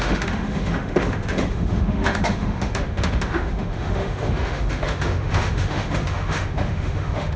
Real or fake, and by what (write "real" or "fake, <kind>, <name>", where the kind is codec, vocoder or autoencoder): fake, autoencoder, DAC-VAE